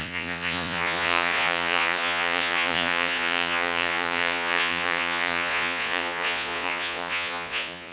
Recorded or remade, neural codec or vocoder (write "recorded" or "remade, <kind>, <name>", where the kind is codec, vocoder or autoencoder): remade, vocoder, Vocos